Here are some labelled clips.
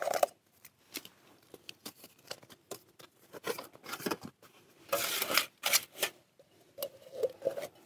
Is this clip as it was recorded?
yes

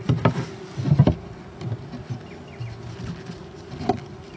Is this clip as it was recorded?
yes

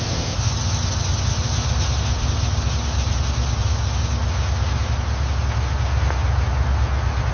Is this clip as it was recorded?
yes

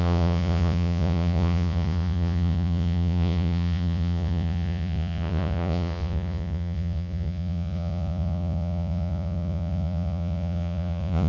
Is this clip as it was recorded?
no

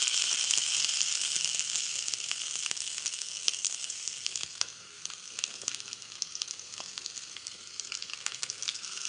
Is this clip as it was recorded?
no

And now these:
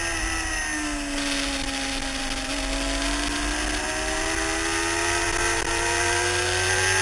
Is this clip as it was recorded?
yes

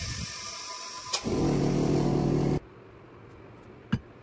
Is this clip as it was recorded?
yes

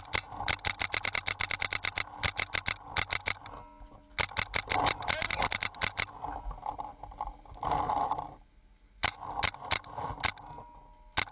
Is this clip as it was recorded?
yes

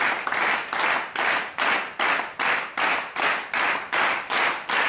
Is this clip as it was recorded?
yes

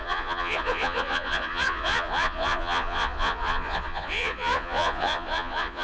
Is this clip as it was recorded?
no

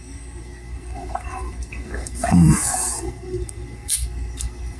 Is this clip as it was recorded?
no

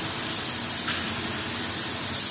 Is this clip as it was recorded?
yes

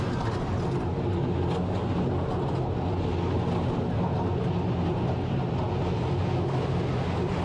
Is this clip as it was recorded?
yes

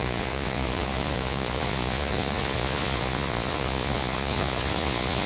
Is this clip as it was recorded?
no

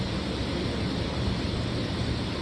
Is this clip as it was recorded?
yes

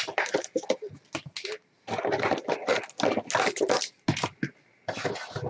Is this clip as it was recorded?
yes